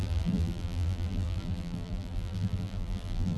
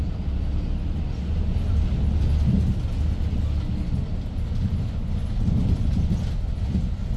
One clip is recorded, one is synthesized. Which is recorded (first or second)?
second